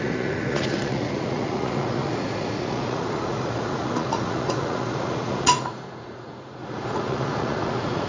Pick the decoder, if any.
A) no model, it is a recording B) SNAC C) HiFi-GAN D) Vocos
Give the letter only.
D